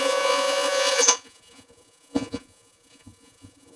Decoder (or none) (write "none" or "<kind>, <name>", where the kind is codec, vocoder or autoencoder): vocoder, Vocos